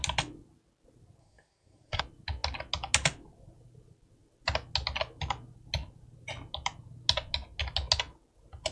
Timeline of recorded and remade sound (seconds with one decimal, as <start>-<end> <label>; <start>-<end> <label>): 0.0-1.2 recorded; 1.2-2.0 remade; 2.0-8.7 recorded

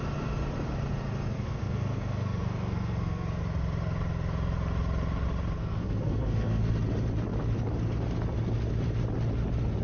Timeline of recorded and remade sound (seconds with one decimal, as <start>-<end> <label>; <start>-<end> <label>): 0.0-1.3 recorded; 1.3-3.4 remade; 3.4-5.6 recorded; 5.6-6.7 remade; 6.7-9.8 recorded

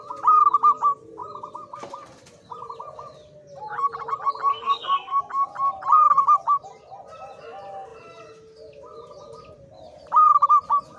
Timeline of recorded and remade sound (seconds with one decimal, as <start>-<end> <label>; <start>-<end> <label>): 0.0-4.5 recorded; 4.5-5.2 remade; 5.2-11.0 recorded

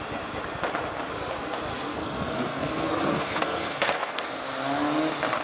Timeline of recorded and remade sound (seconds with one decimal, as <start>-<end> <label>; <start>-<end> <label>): 0.0-1.9 recorded; 1.9-4.4 remade; 4.4-5.4 recorded

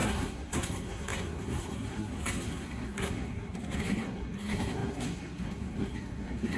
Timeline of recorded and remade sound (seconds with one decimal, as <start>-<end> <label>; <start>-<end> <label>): 0.0-6.6 remade